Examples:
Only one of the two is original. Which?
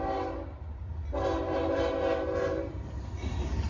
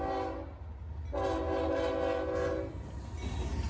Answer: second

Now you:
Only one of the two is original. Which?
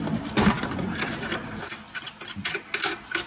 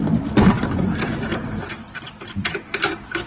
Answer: first